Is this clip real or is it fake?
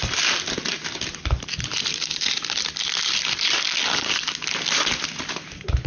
real